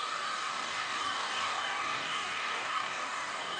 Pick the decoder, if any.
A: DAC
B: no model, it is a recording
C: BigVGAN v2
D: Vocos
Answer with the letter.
A